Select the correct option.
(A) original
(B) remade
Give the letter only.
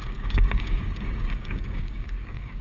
B